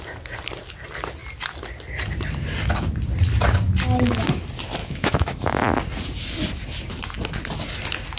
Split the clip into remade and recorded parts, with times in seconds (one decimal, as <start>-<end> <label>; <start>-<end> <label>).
0.0-4.8 recorded; 4.8-5.8 remade; 5.8-8.2 recorded